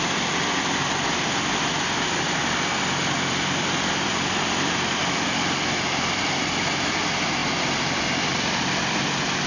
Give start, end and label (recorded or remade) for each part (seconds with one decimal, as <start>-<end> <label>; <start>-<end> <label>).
0.0-7.4 remade; 7.4-8.3 recorded; 8.3-9.5 remade